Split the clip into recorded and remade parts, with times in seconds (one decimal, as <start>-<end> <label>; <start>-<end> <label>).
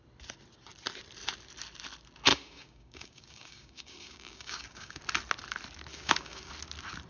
0.0-2.3 recorded; 2.3-5.0 remade; 5.0-5.9 recorded; 5.9-6.5 remade; 6.5-7.1 recorded